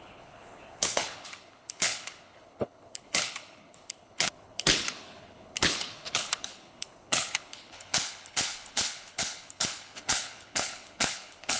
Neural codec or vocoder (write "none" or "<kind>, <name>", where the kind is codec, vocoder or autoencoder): codec, HILCodec